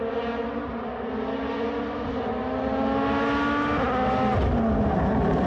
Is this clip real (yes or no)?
yes